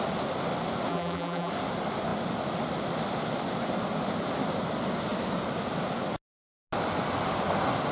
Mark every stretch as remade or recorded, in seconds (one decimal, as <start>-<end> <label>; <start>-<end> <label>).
0.0-0.9 recorded; 0.9-1.5 remade; 1.5-7.9 recorded